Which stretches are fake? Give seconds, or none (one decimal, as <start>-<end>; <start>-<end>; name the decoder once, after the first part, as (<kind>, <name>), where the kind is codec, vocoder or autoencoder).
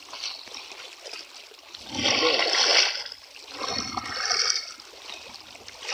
none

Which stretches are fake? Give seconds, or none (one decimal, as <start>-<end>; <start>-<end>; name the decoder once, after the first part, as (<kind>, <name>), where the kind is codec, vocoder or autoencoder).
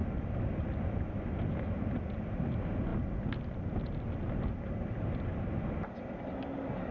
none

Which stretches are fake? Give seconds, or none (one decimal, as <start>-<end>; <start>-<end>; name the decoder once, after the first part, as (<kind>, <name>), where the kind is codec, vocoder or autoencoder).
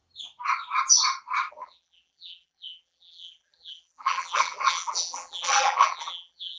1.5-6.6 (vocoder, BigVGAN v2)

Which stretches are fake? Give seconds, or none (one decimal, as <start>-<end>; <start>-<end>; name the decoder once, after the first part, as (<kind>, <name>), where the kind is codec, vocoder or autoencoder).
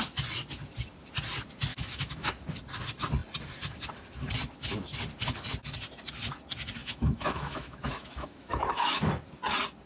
1.7-2.3 (autoencoder, DAC-VAE); 6.8-9.1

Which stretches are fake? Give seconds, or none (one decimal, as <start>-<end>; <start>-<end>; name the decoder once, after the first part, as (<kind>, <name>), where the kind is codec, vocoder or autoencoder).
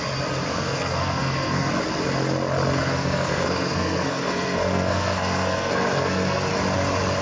0.5-1.7 (codec, SNAC); 2.8-6.5